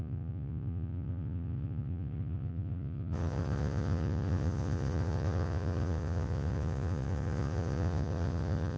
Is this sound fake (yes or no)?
yes